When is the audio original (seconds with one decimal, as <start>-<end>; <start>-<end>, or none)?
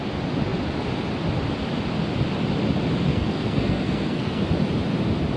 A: 0.0-3.1; 4.4-5.4